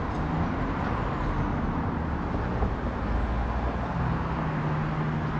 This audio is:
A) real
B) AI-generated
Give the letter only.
A